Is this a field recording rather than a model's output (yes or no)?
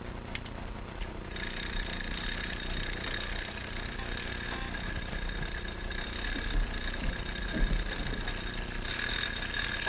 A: yes